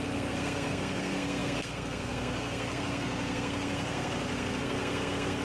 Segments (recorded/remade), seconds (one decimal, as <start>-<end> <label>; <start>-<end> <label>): 0.0-5.4 remade